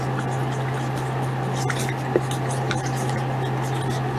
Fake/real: real